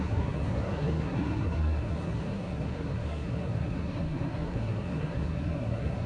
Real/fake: fake